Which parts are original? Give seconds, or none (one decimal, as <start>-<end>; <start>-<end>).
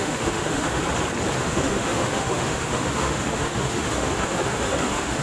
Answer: 0.8-1.4